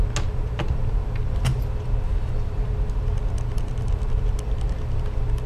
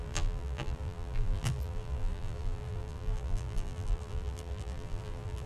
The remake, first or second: second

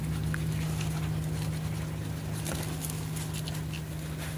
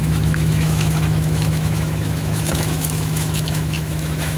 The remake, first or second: second